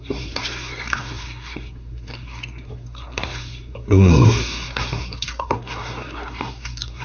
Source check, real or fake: fake